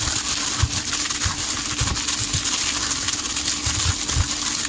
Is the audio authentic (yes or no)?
yes